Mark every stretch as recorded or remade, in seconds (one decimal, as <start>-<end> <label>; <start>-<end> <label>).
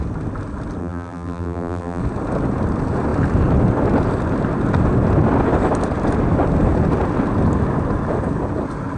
0.0-0.8 recorded; 0.8-2.0 remade; 2.0-9.0 recorded